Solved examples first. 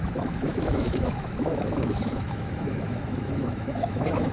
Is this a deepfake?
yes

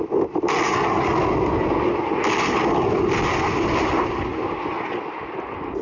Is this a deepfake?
no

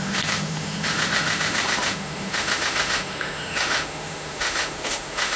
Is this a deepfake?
yes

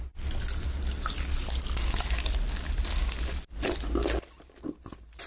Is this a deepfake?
no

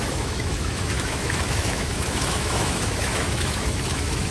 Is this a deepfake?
yes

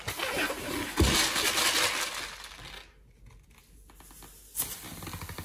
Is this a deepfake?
no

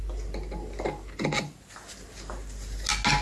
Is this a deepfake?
no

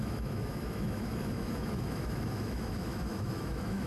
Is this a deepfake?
yes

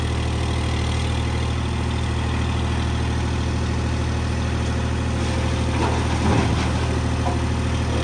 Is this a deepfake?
no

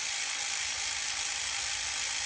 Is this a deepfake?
no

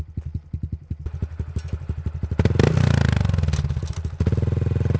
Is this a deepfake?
no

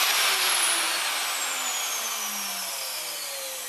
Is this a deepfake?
no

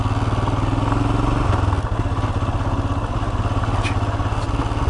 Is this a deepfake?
no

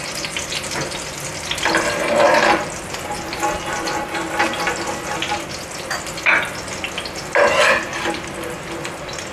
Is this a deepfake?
no